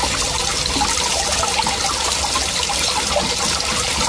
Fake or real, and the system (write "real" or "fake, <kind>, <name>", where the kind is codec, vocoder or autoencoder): real